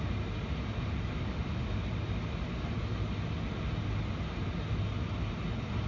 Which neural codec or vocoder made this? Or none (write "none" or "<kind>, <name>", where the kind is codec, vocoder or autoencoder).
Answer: none